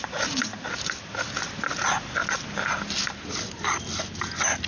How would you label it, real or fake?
real